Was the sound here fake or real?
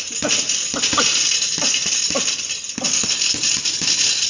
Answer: real